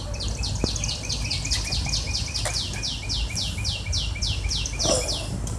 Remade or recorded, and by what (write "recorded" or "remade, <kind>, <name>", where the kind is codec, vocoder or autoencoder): recorded